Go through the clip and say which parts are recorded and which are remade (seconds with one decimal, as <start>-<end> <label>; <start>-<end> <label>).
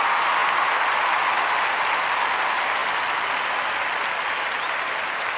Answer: 0.0-5.4 recorded